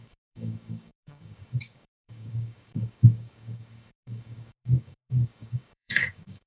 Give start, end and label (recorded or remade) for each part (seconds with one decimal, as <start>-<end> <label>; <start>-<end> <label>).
0.0-6.5 remade